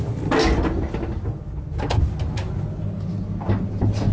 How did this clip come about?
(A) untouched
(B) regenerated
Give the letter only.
A